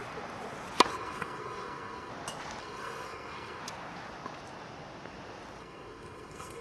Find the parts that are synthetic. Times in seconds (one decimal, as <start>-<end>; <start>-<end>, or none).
0.9-2.1; 2.6-3.6; 5.6-6.6